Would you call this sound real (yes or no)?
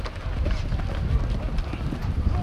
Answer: yes